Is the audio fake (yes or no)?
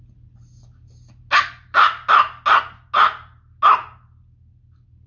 no